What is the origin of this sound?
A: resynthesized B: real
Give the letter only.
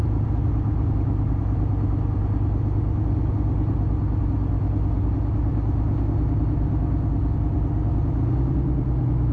B